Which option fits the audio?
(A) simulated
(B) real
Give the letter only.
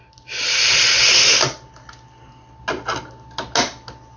B